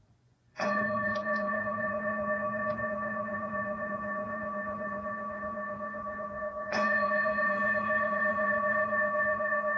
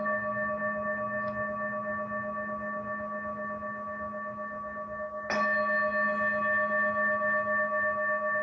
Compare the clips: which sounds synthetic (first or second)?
first